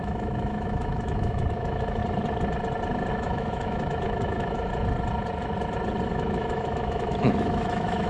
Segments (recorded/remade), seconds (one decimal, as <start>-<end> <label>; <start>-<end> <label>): 0.0-2.0 remade; 2.0-3.1 recorded; 3.1-4.7 remade; 4.7-6.1 recorded; 6.1-8.1 remade